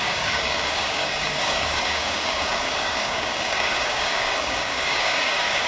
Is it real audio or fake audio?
fake